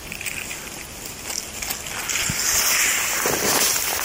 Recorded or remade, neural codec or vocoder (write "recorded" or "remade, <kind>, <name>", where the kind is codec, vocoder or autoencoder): recorded